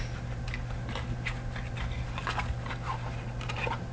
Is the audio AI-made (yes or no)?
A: no